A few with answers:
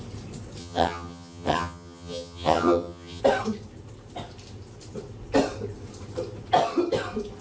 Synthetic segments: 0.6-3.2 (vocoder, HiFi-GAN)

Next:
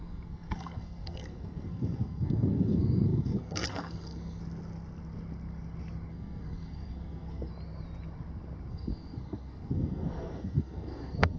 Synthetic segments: 0.0-4.4 (codec, SNAC); 6.1-7.5; 8.7-11.4

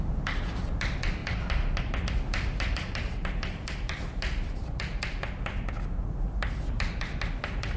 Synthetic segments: none

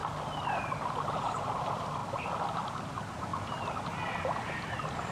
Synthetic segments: 0.6-2.0 (vocoder, BigVGAN v2); 2.7-3.3; 4.6-5.1